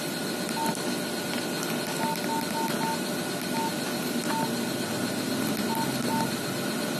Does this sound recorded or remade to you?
recorded